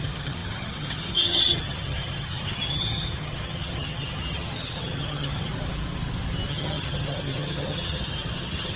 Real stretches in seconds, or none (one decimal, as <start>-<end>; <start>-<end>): 5.5-6.5